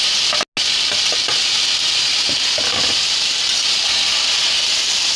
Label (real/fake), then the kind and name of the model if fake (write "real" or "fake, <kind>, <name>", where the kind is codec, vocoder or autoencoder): real